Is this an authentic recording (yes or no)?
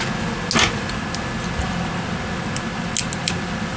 yes